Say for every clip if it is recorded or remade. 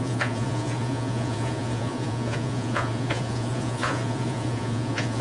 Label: remade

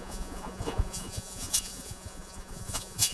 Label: remade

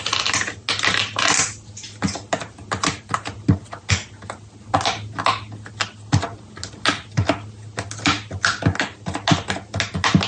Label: recorded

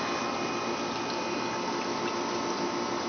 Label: recorded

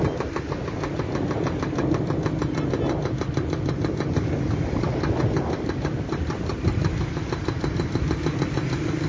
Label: recorded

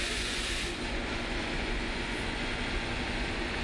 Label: remade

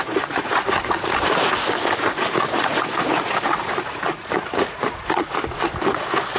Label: remade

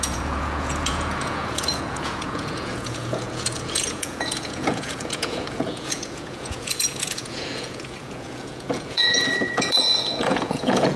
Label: remade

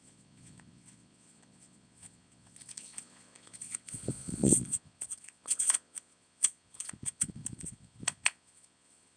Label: remade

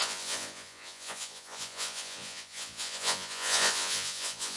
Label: remade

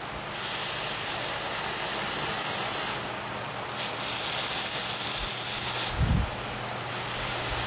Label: recorded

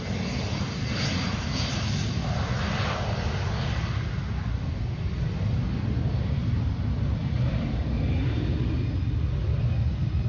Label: recorded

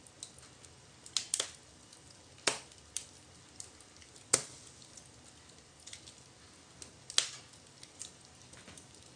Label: recorded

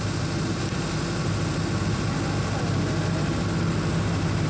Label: recorded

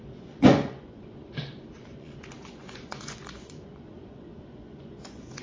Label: remade